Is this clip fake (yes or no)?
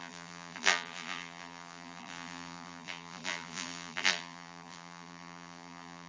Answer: yes